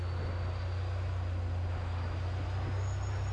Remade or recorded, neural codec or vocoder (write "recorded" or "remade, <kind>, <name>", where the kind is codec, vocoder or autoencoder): recorded